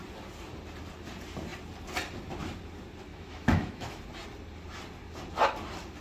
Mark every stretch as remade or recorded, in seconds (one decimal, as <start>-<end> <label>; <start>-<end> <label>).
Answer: 0.0-3.1 recorded; 3.1-4.0 remade; 4.0-6.0 recorded